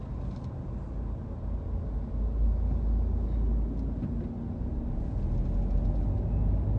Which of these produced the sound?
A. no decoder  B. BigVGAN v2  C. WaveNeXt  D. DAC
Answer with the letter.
A